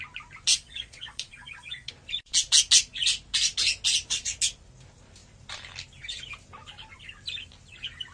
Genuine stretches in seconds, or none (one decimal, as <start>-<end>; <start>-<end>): 0.0-0.5; 1.9-8.1